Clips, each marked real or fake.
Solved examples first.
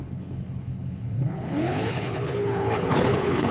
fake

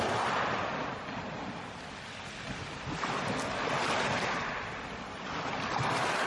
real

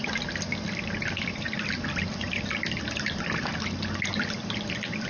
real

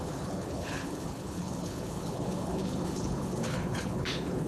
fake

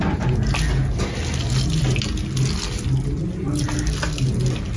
real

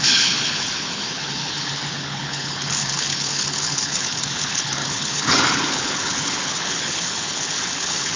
fake